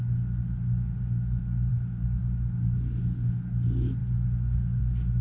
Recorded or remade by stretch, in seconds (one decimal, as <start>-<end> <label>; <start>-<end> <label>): 0.0-5.2 recorded